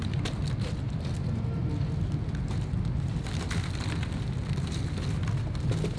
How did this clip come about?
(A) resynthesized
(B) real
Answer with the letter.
B